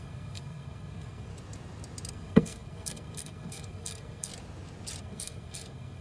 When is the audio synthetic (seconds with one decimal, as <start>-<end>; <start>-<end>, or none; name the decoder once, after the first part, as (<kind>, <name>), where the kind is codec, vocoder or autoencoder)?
0.0-1.3 (codec, SNAC); 2.1-4.3; 5.0-6.0